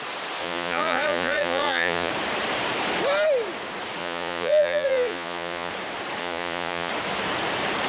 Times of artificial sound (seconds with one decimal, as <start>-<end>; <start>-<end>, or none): 0.4-2.1; 4.0-5.7; 6.2-6.9